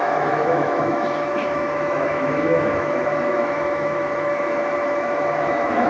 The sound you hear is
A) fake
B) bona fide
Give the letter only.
A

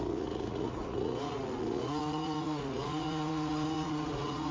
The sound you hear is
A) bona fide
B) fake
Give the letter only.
B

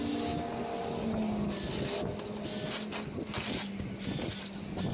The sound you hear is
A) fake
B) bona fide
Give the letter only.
B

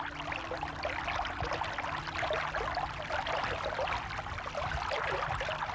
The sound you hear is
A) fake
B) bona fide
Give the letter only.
B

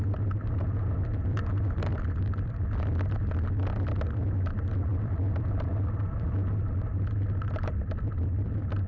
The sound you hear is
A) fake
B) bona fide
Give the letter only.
A